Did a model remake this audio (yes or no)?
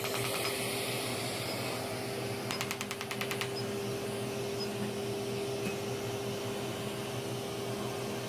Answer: no